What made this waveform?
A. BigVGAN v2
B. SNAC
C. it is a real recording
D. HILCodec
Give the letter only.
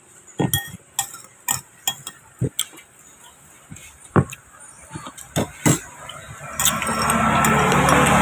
C